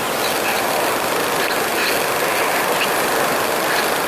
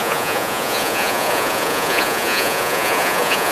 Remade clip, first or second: second